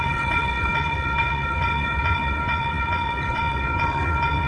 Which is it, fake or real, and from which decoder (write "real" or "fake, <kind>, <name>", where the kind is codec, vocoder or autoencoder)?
fake, vocoder, WaveNeXt